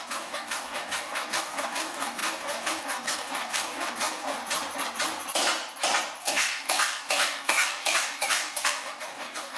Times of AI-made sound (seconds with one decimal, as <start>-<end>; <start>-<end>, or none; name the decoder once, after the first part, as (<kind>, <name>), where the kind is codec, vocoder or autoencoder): 0.0-4.4 (codec, DAC); 6.2-9.6